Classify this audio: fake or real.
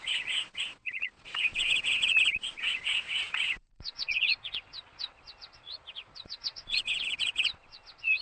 fake